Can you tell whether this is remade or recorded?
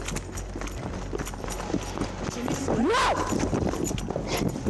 recorded